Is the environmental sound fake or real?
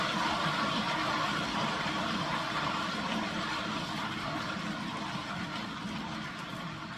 real